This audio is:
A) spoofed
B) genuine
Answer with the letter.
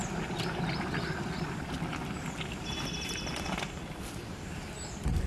B